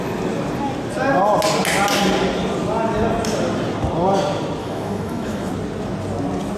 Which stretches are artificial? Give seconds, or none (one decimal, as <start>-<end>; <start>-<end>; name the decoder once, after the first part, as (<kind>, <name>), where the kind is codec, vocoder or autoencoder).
4.6-5.5 (autoencoder, DAC-VAE)